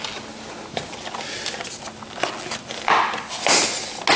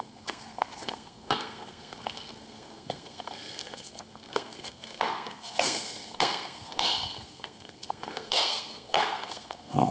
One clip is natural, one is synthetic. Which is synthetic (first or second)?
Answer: second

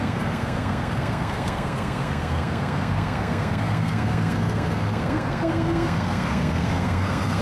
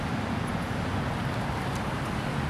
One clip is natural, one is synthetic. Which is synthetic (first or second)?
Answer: first